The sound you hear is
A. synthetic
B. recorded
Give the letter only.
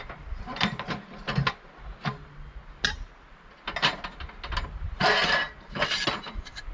B